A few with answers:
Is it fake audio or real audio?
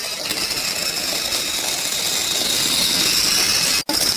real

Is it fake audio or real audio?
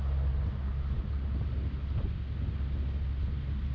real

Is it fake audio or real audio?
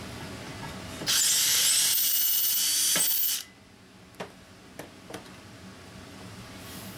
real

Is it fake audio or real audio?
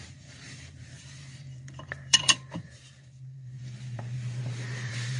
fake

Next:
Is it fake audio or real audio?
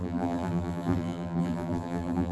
fake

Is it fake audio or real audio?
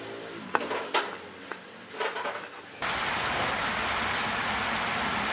real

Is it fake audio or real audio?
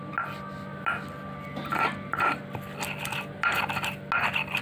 real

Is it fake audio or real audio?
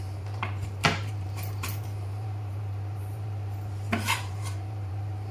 fake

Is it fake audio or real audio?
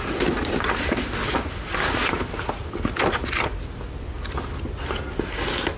real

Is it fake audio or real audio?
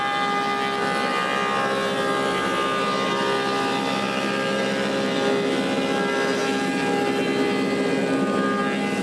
real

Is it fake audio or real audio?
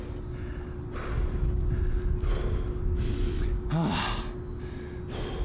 real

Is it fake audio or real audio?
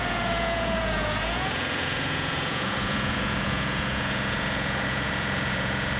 fake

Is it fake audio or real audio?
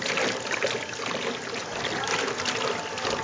real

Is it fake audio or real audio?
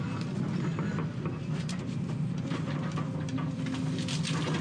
real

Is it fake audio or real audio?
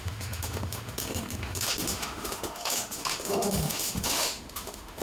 fake